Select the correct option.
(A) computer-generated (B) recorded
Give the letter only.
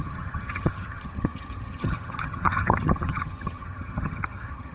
A